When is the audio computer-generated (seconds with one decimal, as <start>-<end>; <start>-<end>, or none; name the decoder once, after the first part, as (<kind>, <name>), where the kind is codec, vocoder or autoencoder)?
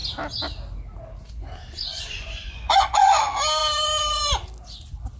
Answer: 1.9-3.2 (vocoder, Vocos)